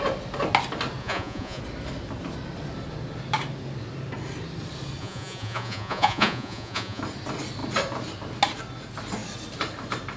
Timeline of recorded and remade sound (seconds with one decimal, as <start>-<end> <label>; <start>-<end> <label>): 0.0-1.0 recorded; 1.0-1.6 remade; 1.6-5.0 recorded; 5.0-7.0 remade; 7.0-10.2 recorded